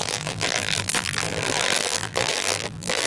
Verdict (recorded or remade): remade